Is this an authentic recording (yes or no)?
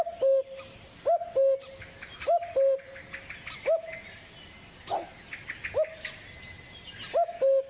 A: yes